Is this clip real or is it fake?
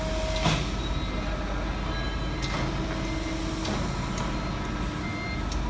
real